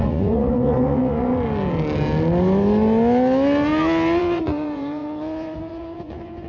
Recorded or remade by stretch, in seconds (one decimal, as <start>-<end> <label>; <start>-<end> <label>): 0.0-1.3 remade; 1.3-4.2 recorded; 4.2-6.5 remade